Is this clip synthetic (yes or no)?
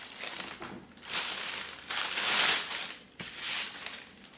no